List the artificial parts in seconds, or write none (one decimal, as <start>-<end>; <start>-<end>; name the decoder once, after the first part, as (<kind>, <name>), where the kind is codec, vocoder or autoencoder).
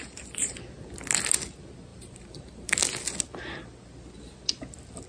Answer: 1.9-2.8 (vocoder, BigVGAN v2)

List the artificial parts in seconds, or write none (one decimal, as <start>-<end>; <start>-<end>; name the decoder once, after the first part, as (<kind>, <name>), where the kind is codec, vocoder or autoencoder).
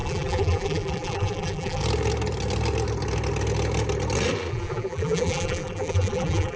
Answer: 0.0-1.8 (vocoder, BigVGAN v2); 4.5-6.6